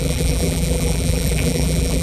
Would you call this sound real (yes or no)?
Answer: no